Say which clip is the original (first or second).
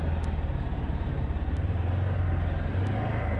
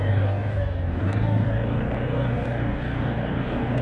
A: first